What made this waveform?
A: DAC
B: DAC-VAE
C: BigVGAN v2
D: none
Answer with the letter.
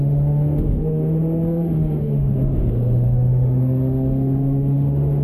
B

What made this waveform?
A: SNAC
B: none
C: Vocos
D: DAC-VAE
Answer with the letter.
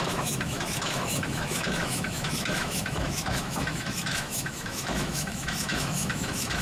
D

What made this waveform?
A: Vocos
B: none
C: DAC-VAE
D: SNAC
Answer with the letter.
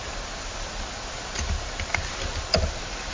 B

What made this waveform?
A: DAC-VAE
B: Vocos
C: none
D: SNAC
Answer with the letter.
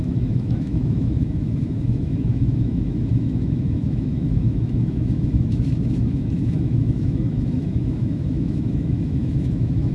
A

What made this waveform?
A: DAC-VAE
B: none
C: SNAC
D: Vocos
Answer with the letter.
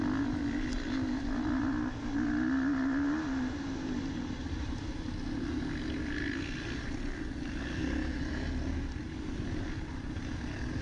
B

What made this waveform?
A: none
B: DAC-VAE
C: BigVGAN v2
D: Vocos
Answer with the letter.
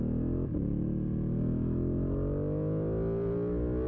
A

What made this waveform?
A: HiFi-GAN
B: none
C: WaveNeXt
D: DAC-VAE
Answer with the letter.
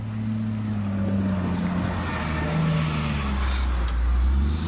B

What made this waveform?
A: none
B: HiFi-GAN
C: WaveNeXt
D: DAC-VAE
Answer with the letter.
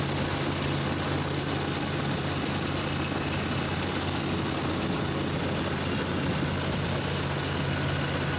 A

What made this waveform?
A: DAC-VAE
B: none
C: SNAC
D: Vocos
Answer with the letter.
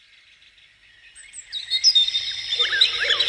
B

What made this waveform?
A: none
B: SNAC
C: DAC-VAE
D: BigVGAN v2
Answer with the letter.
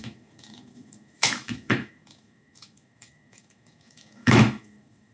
C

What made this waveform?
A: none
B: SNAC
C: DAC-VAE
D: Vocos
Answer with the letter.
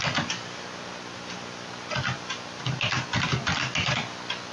A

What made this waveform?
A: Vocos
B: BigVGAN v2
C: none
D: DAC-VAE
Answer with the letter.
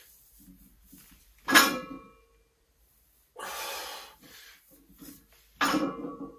C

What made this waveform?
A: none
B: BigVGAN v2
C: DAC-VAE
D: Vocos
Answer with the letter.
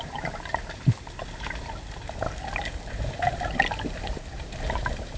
A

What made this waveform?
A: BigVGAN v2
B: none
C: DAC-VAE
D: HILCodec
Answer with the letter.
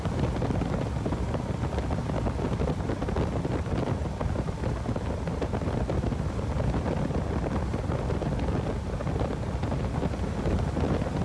B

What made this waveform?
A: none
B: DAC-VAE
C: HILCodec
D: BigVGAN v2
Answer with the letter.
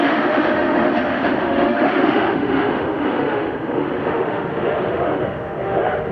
B